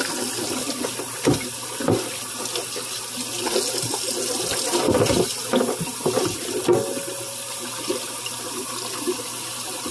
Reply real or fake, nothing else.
real